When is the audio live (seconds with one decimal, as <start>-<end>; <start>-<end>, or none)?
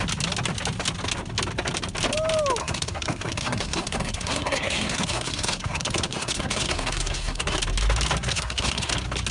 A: 0.0-2.6; 7.6-8.3; 8.9-9.3